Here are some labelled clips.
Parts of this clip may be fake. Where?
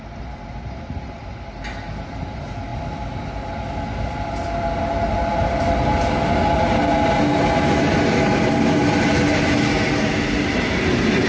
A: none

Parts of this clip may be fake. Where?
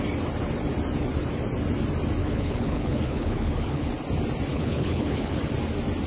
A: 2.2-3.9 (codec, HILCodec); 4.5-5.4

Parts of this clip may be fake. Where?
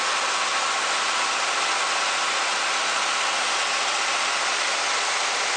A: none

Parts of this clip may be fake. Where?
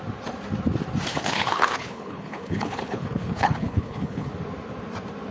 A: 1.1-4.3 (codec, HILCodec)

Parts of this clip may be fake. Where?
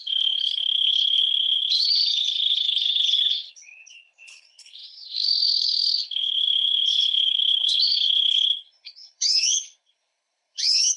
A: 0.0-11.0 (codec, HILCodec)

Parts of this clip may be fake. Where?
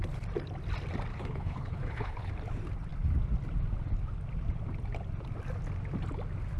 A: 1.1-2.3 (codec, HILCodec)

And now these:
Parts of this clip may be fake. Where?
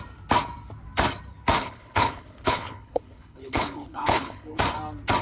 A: 1.6-4.6 (codec, HILCodec)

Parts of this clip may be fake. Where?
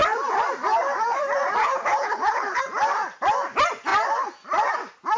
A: 1.6-2.6 (codec, HILCodec)